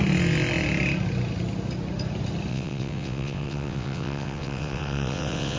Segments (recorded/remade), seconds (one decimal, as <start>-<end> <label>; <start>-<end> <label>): 0.0-2.5 recorded; 2.5-5.6 remade